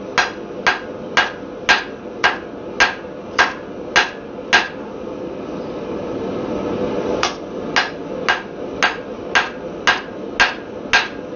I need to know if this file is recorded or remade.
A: recorded